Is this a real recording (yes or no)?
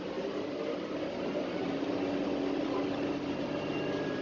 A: yes